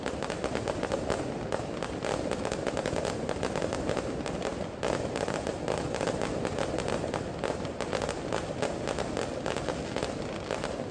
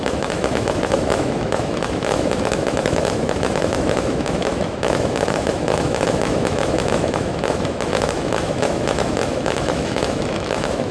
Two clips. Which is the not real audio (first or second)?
second